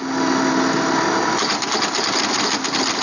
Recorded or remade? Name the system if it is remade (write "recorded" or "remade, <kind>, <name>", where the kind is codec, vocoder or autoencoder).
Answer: recorded